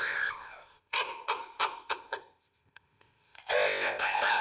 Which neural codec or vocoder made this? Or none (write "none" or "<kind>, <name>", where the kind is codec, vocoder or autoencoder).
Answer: codec, ZipCodec